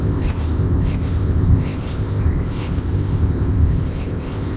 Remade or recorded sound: remade